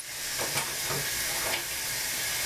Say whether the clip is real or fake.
real